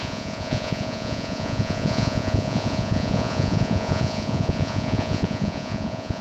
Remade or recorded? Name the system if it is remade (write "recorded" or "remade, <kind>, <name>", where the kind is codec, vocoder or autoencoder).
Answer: remade, vocoder, Vocos